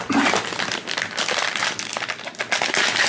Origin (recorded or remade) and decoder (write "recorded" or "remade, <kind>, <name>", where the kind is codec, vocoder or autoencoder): recorded